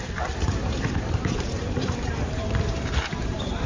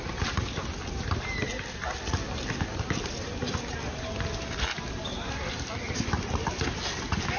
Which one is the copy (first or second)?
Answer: first